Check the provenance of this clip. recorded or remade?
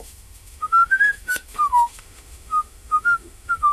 remade